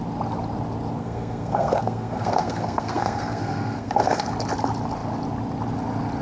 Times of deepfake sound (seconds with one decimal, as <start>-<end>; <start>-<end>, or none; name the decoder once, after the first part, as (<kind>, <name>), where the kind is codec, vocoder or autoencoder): 1.0-4.3 (codec, SNAC)